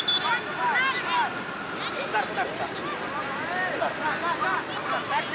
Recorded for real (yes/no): yes